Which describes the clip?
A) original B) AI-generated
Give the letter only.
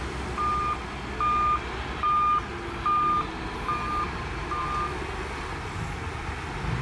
A